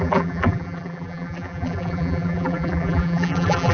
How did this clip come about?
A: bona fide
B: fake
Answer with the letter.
B